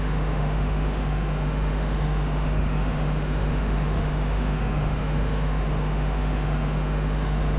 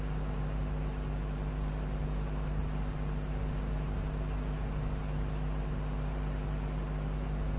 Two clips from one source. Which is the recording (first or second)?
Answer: second